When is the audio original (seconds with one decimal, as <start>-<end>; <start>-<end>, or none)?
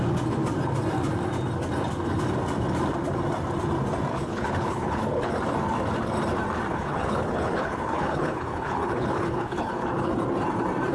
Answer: 0.0-4.1; 5.3-6.7; 10.1-10.9